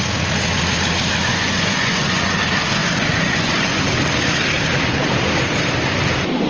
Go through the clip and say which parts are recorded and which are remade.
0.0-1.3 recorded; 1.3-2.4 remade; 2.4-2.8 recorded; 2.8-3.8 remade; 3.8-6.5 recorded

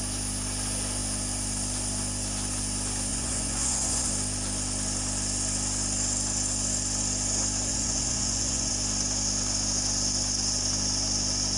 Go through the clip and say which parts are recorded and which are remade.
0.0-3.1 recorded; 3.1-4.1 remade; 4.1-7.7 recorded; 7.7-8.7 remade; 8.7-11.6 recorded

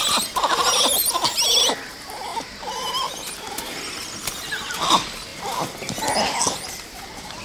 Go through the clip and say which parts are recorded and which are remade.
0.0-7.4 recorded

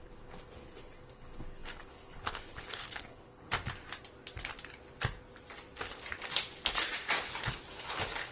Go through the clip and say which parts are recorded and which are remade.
0.0-3.5 remade; 3.5-7.2 recorded; 7.2-8.3 remade

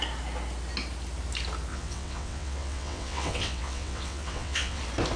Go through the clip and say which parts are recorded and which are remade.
0.0-1.7 recorded; 1.7-4.8 remade; 4.8-5.2 recorded

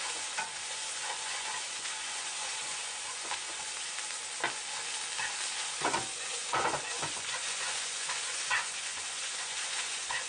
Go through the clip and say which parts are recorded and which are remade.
0.0-3.7 remade; 3.7-5.5 recorded; 5.5-10.3 remade

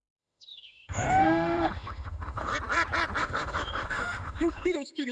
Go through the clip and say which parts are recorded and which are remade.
0.0-2.5 remade; 2.5-3.2 recorded; 3.2-5.1 remade

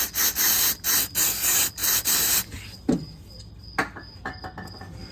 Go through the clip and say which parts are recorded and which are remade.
0.0-5.1 recorded